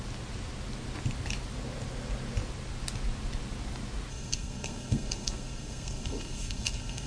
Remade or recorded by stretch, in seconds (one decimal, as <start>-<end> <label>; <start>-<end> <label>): 0.0-4.1 recorded; 4.1-7.1 remade